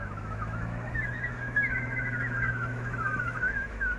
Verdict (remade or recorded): remade